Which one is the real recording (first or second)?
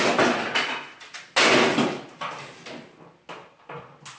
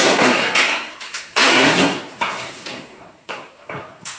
first